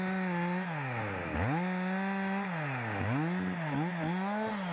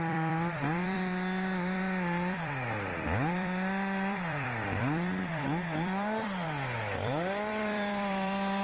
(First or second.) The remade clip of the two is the second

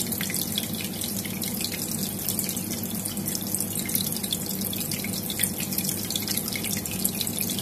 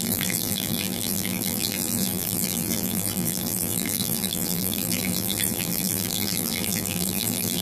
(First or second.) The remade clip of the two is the second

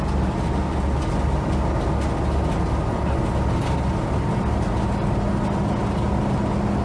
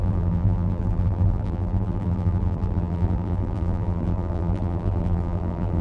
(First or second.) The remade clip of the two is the second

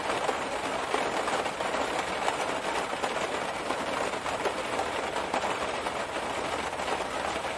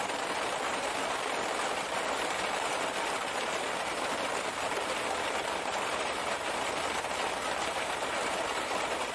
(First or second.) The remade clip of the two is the second